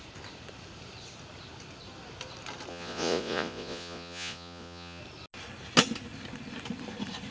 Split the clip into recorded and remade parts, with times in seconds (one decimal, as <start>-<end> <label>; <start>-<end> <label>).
0.0-2.7 recorded; 2.7-5.0 remade; 5.0-7.3 recorded